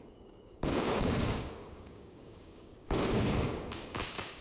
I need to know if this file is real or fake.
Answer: fake